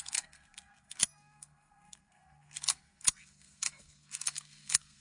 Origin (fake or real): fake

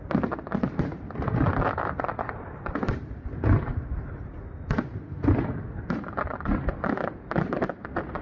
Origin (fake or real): real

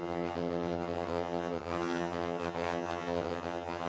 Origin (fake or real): fake